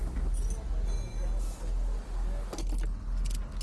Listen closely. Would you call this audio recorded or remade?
recorded